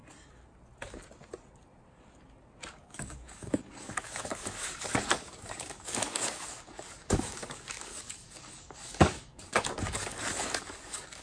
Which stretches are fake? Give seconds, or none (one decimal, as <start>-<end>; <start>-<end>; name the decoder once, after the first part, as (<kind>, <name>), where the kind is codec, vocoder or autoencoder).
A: 2.7-11.2 (codec, DAC)